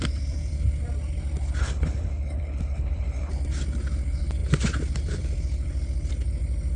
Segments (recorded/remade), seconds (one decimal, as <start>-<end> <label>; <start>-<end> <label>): 0.0-1.6 recorded; 1.6-3.3 remade; 3.3-6.8 recorded

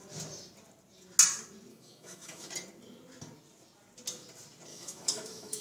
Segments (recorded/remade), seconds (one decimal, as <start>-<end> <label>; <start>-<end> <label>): 0.0-1.7 recorded; 1.7-2.5 remade; 2.5-4.7 recorded; 4.7-5.6 remade

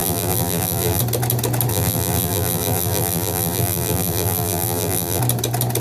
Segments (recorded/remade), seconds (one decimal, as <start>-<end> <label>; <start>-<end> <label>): 0.0-1.0 remade; 1.0-1.7 recorded; 1.7-5.2 remade; 5.2-5.8 recorded

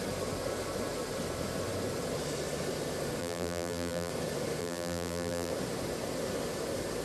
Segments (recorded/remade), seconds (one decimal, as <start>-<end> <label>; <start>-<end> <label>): 0.0-3.2 recorded; 3.2-4.1 remade; 4.1-4.6 recorded; 4.6-5.5 remade; 5.5-7.0 recorded